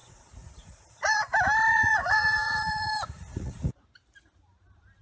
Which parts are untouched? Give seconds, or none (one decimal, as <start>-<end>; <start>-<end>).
1.2-1.7; 3.7-5.0